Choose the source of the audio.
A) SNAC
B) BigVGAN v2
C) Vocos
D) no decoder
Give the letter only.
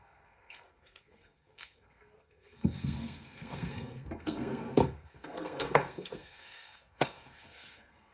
A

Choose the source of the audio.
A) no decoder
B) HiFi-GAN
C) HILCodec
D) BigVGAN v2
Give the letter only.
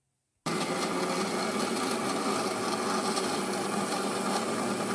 A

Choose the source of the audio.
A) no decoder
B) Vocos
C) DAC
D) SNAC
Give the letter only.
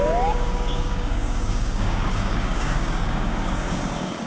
C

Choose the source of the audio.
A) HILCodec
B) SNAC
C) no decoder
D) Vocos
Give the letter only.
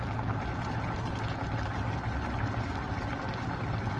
C